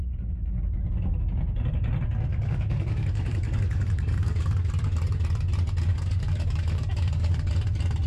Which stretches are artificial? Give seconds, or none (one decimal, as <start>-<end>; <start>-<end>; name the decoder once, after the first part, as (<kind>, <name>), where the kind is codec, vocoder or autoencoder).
2.3-4.7 (codec, DAC); 5.9-7.5